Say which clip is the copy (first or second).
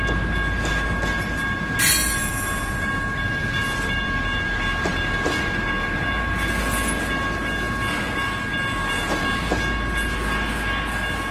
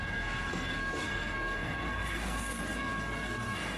second